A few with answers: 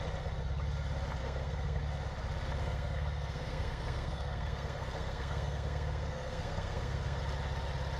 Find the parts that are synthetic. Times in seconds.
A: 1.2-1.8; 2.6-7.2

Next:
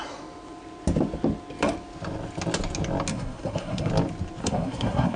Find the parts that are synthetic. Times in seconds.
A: 3.1-3.9; 4.4-5.2

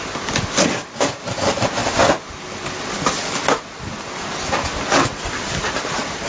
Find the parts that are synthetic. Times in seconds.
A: none

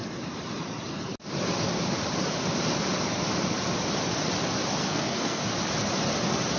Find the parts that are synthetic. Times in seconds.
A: 4.8-5.4